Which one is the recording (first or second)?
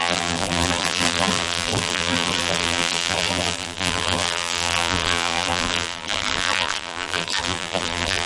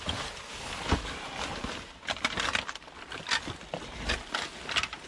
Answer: second